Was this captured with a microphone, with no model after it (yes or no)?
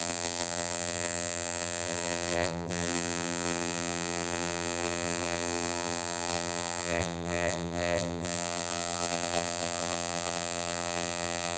no